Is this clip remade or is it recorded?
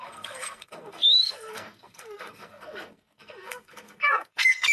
remade